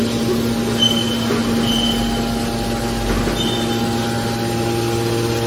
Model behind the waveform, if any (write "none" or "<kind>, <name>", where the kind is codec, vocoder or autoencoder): none